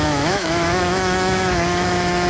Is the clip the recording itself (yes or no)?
no